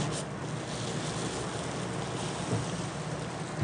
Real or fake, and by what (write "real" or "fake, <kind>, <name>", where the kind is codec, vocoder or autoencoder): real